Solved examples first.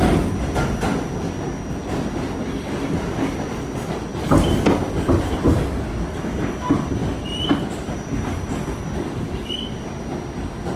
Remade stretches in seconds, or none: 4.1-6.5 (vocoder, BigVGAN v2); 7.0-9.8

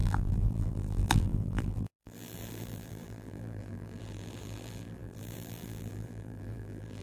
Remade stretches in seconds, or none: 0.0-7.0 (vocoder, BigVGAN v2)